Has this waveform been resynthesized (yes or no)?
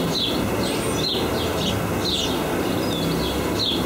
no